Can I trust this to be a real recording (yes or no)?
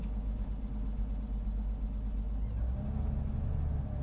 yes